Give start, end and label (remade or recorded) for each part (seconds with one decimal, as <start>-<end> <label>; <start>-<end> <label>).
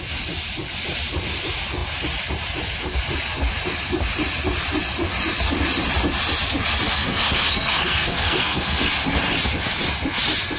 0.0-6.9 recorded; 6.9-8.9 remade; 8.9-10.6 recorded